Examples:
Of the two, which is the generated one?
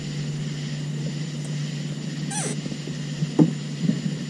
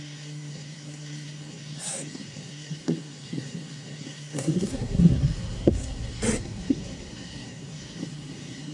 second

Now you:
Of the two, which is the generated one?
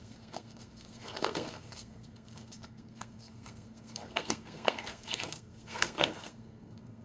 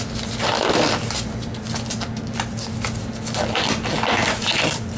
first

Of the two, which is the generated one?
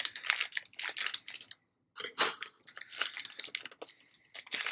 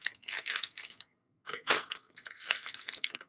second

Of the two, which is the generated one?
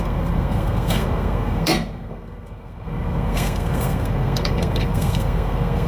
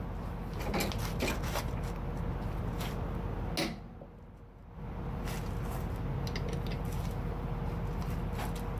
first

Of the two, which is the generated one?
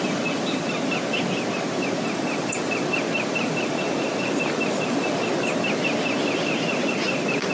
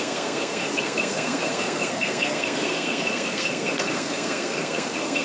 second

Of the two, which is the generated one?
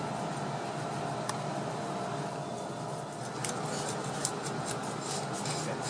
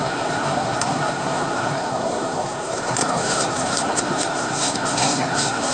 second